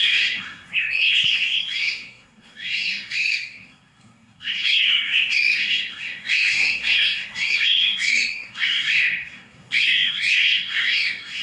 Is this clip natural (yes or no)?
no